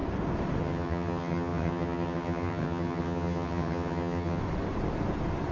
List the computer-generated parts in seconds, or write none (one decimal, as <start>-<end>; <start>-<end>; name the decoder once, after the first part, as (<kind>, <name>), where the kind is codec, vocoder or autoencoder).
0.6-4.4 (vocoder, HiFi-GAN)